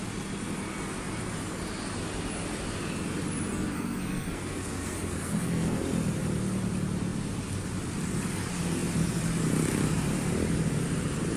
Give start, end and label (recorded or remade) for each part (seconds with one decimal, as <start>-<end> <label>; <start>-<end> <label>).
0.0-3.5 recorded; 3.5-5.8 remade; 5.8-11.4 recorded